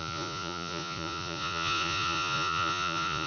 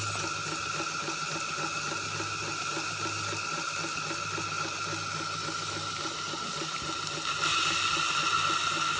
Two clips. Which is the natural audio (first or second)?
second